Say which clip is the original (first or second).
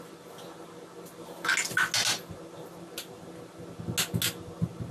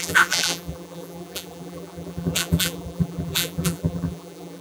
first